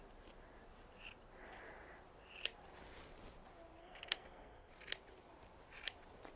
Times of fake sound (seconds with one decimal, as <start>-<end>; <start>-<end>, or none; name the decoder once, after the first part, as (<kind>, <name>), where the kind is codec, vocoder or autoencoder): 3.8-4.7 (codec, SNAC)